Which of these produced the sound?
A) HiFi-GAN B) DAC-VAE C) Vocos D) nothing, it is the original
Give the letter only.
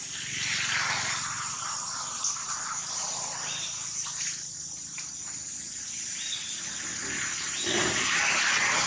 D